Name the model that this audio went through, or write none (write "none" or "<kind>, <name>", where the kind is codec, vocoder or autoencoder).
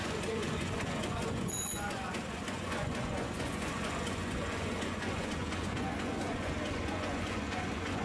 vocoder, Vocos